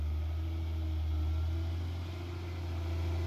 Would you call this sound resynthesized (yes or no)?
no